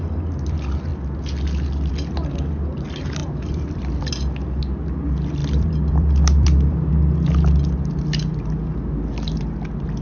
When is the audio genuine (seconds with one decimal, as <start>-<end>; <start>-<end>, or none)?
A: 0.0-3.2; 4.1-5.4; 6.9-10.0